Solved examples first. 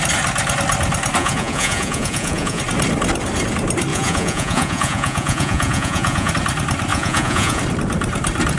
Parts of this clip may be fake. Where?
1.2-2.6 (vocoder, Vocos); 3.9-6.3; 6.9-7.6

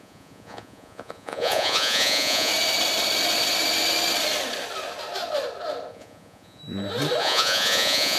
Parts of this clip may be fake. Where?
0.0-2.5 (vocoder, Vocos); 5.9-6.6; 7.2-8.2

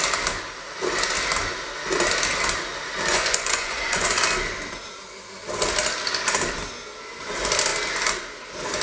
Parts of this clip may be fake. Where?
3.1-4.1 (vocoder, Vocos)

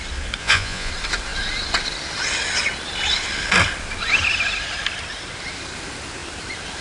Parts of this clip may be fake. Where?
0.4-0.9 (vocoder, Vocos)

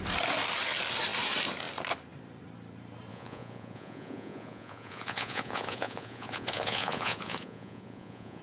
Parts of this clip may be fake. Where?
3.1-8.4 (vocoder, Vocos)

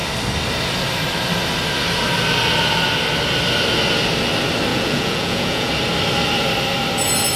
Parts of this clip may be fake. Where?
4.7-5.7 (vocoder, Vocos)